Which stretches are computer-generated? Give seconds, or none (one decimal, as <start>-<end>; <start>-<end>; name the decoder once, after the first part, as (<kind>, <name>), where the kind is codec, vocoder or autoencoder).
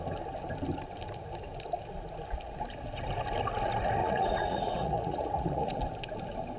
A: 4.0-5.7 (vocoder, Vocos)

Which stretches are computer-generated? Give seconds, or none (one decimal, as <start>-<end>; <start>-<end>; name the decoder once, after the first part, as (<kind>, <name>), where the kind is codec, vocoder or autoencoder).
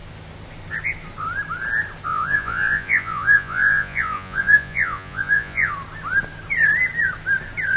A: 2.1-5.7 (vocoder, Vocos)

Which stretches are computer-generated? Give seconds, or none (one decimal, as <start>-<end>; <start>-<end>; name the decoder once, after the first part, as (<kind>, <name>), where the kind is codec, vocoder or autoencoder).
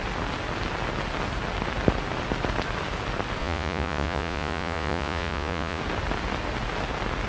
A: 3.4-5.8 (vocoder, Vocos)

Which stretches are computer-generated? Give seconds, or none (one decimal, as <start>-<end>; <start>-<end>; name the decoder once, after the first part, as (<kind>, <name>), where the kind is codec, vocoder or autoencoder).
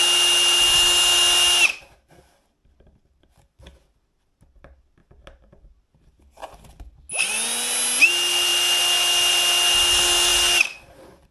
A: none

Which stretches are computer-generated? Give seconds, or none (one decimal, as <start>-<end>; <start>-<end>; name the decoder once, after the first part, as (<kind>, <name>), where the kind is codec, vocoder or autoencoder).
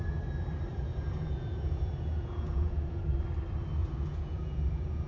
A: 0.7-3.0 (vocoder, Vocos); 3.8-5.1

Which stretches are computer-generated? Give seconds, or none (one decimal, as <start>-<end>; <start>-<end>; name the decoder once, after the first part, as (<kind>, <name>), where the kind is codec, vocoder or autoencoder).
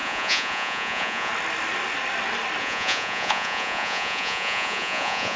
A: 0.0-1.3 (vocoder, Vocos); 2.6-5.4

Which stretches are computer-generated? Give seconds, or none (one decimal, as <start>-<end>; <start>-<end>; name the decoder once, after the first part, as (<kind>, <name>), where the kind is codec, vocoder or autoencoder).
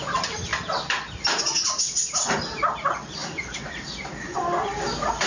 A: none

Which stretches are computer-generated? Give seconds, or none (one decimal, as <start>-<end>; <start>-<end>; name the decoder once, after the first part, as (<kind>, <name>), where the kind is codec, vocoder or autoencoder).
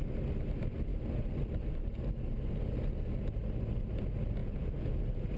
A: 4.4-5.0 (vocoder, Vocos)